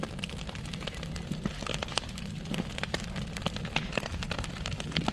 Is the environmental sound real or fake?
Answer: real